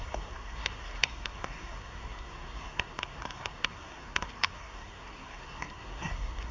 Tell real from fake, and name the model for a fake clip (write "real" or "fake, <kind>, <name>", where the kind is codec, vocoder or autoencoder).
fake, codec, SNAC